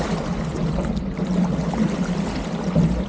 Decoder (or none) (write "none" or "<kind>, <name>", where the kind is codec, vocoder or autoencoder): none